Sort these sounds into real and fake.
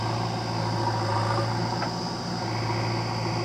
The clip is real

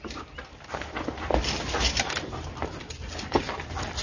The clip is real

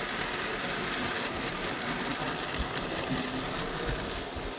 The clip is real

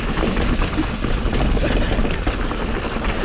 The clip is real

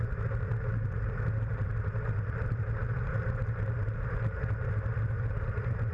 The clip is real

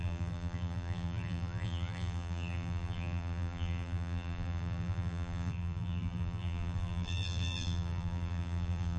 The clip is fake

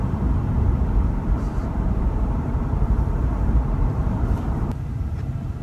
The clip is fake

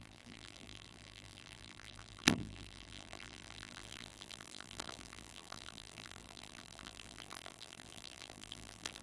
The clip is fake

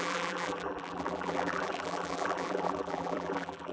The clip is fake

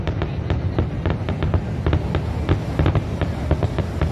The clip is real